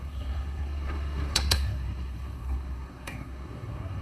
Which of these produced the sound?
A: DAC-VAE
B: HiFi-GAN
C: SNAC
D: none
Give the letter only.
C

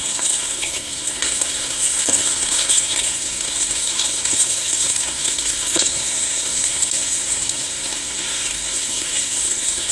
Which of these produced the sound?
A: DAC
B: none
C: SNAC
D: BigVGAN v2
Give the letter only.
C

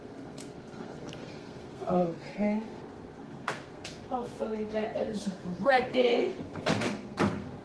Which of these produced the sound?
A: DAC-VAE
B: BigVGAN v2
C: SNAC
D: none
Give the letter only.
C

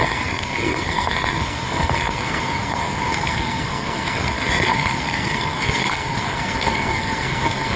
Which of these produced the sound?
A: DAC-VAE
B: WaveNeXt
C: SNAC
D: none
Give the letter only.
C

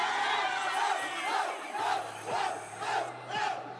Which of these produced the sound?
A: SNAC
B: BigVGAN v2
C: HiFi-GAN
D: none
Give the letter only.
D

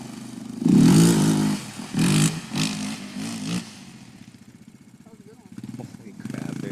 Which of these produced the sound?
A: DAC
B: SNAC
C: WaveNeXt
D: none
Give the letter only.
D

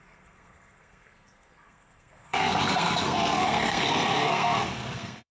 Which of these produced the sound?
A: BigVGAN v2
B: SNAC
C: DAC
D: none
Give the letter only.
B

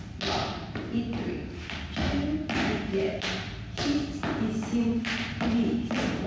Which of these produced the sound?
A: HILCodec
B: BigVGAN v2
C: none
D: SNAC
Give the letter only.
C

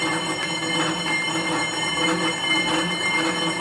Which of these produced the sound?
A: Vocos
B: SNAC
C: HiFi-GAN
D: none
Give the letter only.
D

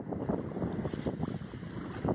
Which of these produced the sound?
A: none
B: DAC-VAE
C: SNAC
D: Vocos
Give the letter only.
A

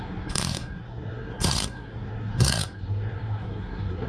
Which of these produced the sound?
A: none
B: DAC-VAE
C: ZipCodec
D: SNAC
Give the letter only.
D